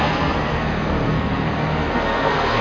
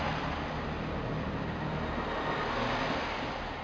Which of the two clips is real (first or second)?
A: second